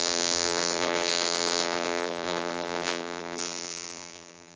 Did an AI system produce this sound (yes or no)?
yes